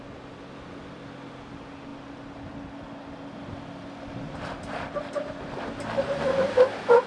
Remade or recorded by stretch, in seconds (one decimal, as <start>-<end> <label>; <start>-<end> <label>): 0.0-7.1 recorded